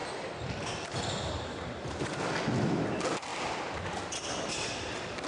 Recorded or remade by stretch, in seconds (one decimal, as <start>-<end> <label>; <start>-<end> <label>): 0.0-1.0 remade; 1.0-5.3 recorded